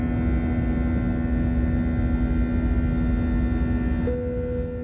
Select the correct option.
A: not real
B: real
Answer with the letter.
B